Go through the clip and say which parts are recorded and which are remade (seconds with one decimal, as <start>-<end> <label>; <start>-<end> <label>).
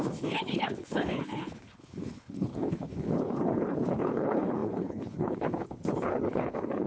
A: 0.0-6.9 remade